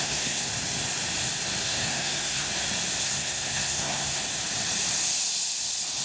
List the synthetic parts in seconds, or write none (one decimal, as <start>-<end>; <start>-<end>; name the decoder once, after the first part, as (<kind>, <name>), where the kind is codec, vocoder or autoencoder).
0.0-0.5 (codec, SNAC); 1.6-2.5; 3.0-4.2